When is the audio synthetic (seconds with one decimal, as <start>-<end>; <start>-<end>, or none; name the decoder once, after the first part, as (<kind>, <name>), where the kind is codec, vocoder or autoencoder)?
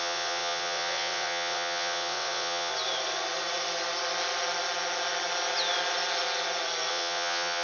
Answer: 0.0-2.7 (vocoder, WaveNeXt); 6.9-7.6